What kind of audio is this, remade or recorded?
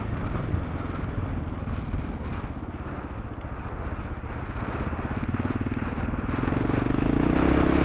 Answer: recorded